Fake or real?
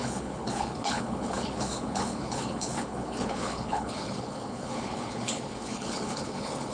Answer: fake